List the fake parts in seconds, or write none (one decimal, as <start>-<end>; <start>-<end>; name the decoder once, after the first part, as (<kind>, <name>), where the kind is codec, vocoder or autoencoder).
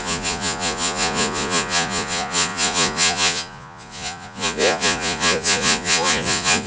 0.0-6.7 (vocoder, Vocos)